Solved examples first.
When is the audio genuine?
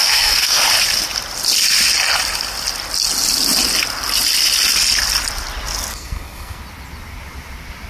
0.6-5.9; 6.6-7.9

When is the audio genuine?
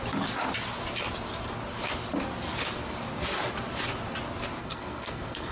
0.0-4.6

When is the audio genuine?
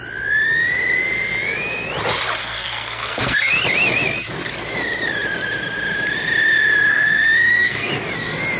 0.0-2.4; 3.5-6.9; 7.9-8.6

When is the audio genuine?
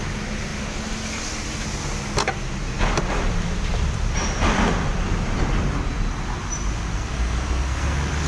0.0-6.9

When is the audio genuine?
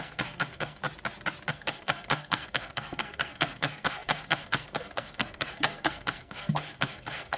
0.8-1.5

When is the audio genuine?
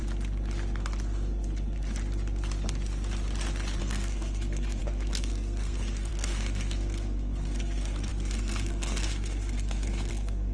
0.0-3.8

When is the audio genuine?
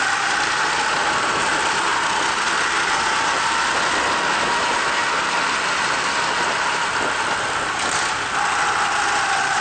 0.0-9.6